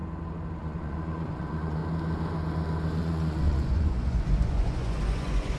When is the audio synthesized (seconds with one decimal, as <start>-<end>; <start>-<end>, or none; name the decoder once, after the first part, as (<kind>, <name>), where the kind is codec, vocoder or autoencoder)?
0.6-1.8 (vocoder, Vocos); 3.0-5.6